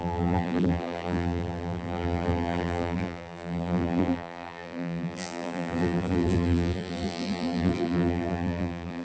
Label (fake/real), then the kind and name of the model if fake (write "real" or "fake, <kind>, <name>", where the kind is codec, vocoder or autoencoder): fake, vocoder, BigVGAN v2